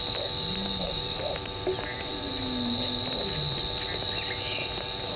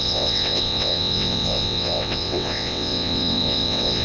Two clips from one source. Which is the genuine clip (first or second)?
first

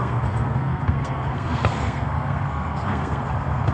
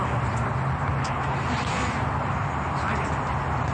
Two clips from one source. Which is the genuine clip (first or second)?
second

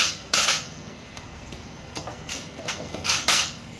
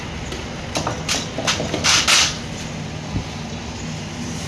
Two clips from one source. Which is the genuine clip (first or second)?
second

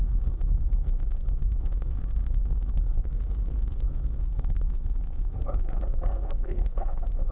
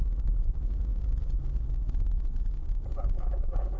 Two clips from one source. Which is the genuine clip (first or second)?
second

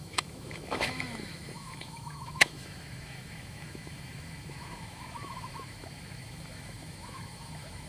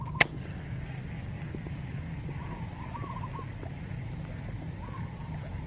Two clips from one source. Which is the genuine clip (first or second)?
second